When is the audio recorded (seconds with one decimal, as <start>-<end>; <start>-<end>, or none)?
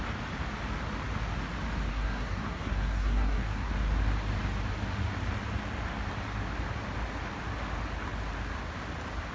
0.0-1.9; 3.7-9.3